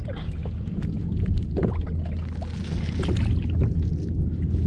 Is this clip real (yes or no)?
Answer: yes